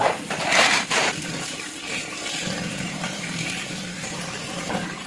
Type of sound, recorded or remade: remade